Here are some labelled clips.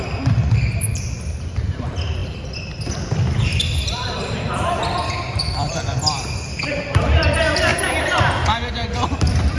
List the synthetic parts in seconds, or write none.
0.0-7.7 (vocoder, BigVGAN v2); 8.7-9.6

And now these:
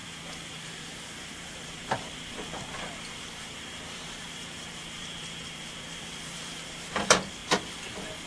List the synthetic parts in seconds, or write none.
0.5-7.4 (vocoder, BigVGAN v2)

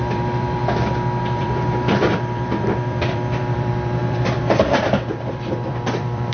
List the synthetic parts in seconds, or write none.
0.0-0.6 (vocoder, BigVGAN v2); 1.2-6.3

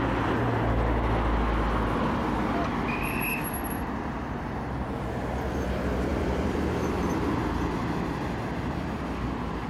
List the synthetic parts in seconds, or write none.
6.1-7.4 (vocoder, BigVGAN v2)